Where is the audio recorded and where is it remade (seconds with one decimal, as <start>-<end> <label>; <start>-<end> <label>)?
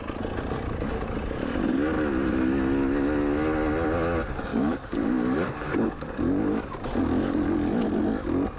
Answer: 0.0-4.5 recorded; 4.5-6.2 remade; 6.2-8.6 recorded